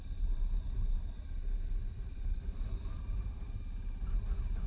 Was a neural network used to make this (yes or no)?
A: no